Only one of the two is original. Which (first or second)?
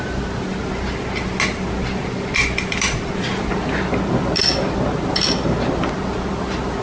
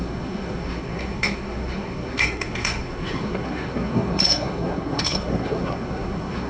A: first